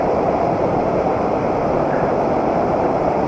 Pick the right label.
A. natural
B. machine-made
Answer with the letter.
B